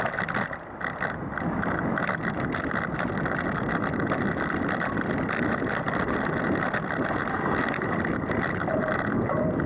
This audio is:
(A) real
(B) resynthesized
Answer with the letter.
A